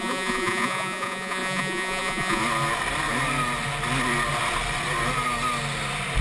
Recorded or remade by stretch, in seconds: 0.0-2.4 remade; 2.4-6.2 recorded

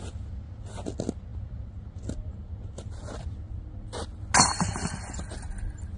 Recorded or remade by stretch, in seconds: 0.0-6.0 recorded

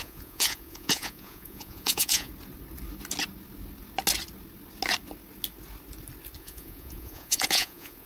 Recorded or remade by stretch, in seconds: 0.0-2.3 remade; 2.3-6.4 recorded; 6.4-8.1 remade

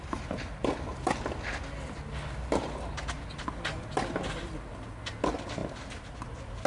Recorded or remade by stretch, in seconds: 0.0-6.7 recorded

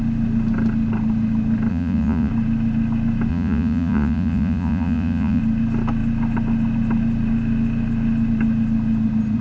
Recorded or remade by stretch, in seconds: 0.0-1.7 recorded; 1.7-2.3 remade; 2.3-3.3 recorded; 3.3-5.4 remade; 5.4-9.4 recorded

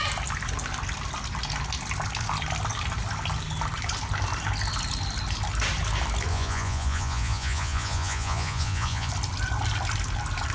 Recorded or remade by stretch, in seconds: 0.0-6.3 recorded; 6.3-9.1 remade; 9.1-10.5 recorded

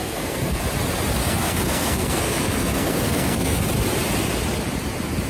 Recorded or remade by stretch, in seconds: 0.0-0.6 remade; 0.6-1.2 recorded; 1.2-3.6 remade; 3.6-5.3 recorded